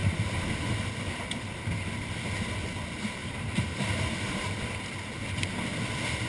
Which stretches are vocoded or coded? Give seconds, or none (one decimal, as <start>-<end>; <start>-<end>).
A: 3.2-4.6